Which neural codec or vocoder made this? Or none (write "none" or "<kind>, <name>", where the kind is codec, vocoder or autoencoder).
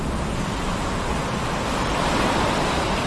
none